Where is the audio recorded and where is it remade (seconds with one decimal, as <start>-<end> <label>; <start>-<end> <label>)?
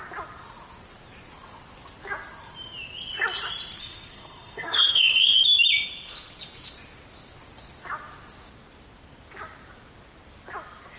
0.0-3.8 recorded; 3.8-5.4 remade; 5.4-11.0 recorded